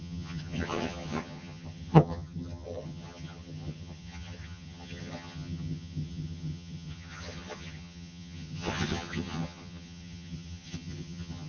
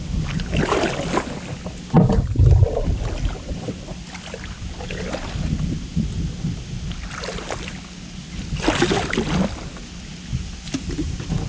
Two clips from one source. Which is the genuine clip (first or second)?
second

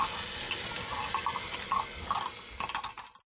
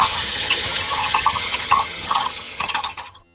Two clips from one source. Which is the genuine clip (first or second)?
first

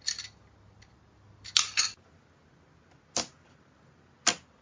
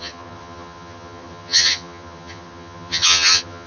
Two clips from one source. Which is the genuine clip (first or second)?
first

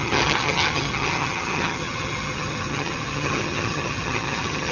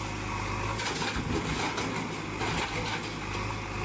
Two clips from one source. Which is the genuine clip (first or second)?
second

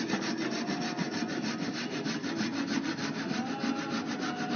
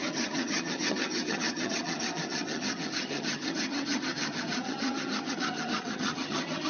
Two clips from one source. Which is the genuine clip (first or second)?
first